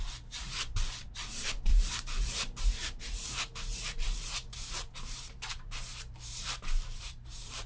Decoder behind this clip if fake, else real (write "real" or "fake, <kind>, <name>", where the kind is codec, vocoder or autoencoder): fake, vocoder, BigVGAN v2